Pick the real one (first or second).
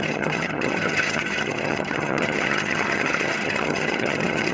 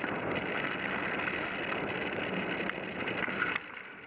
second